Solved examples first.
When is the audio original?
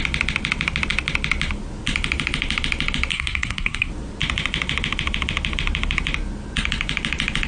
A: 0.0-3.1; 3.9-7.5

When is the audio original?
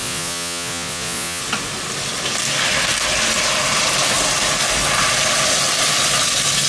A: 1.4-6.7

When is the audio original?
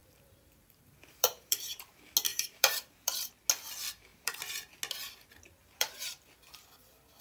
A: 1.9-2.3; 3.3-4.1; 4.8-5.6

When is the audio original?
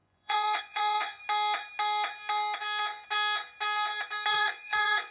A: 1.2-4.3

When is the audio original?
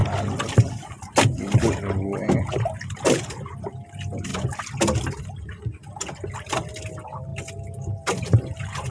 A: 4.3-6.5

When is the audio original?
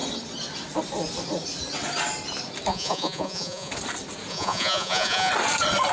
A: 0.0-2.7; 3.7-4.3; 5.3-5.9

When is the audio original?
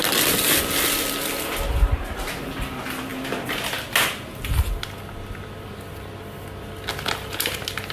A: 0.0-7.9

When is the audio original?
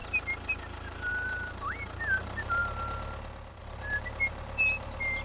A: 0.0-1.1; 2.6-3.6